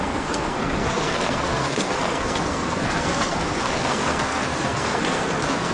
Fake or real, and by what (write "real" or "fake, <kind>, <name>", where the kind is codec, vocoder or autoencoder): fake, codec, SNAC